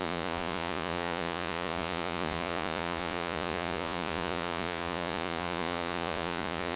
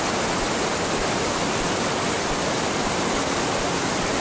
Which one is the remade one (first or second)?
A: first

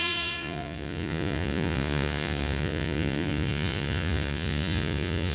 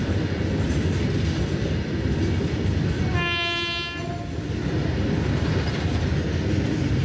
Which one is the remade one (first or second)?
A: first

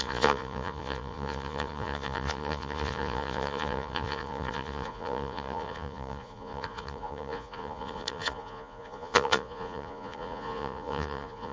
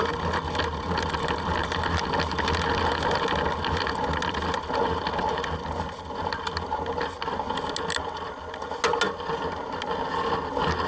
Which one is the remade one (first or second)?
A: first